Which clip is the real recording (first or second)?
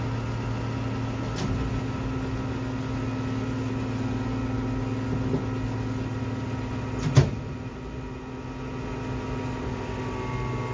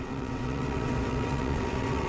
first